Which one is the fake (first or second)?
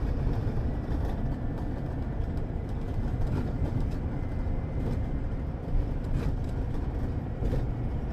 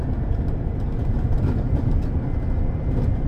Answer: first